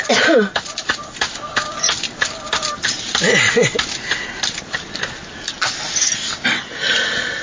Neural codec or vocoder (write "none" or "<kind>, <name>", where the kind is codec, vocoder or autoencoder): none